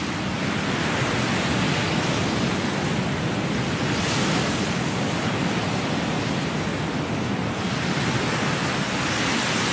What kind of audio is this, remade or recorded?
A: recorded